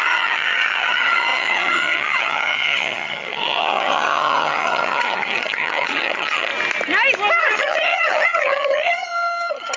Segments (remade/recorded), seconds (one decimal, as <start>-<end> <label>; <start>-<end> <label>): 0.0-6.5 remade; 6.5-7.4 recorded; 7.4-9.8 remade